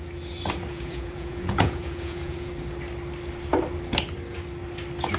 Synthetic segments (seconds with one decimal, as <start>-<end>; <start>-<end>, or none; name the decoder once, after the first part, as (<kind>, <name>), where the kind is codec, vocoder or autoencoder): 0.7-2.5 (vocoder, Vocos)